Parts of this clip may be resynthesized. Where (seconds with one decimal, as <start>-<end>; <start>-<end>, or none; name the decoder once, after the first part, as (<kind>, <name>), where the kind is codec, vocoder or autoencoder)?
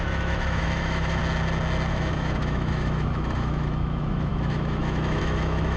0.0-1.2 (autoencoder, DAC-VAE); 1.9-5.8